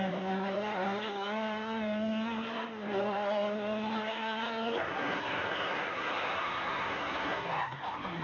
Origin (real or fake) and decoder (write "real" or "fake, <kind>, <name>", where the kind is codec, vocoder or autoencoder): fake, codec, SNAC